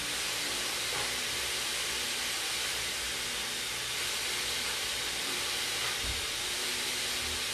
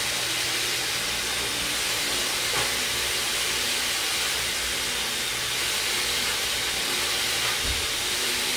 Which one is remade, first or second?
first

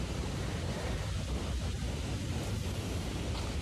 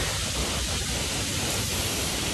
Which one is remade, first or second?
second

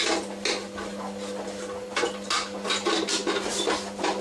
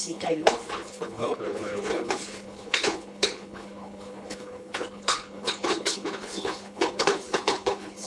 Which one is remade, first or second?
second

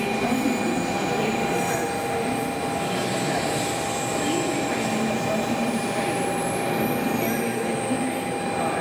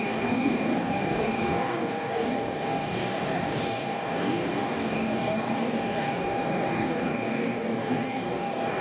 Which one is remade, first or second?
second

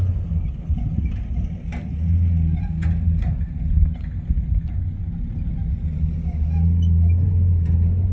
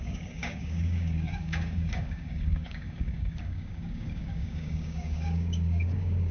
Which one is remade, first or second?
second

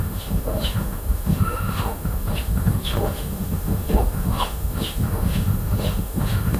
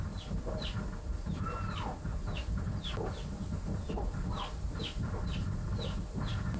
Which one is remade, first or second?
first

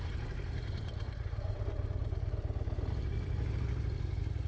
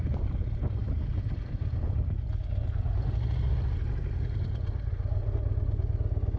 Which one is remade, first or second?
first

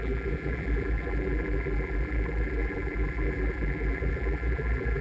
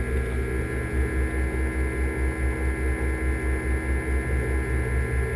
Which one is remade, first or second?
first